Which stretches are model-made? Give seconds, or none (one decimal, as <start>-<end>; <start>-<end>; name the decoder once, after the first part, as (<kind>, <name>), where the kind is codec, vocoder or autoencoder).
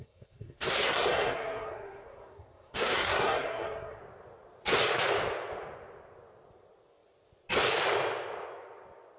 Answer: 0.0-4.0 (codec, SNAC)